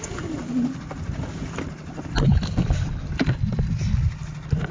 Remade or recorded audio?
recorded